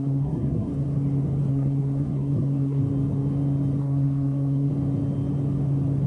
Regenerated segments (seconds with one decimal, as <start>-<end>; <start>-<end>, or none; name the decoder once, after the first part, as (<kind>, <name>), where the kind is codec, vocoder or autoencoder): 0.0-0.7 (codec, SNAC); 1.5-2.8; 3.8-4.7